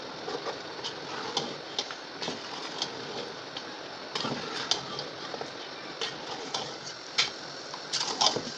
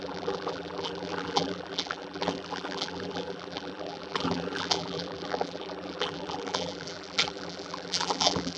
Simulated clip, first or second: second